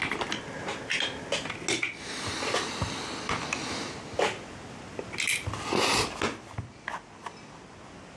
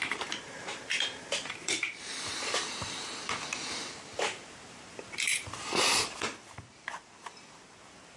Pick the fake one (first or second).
second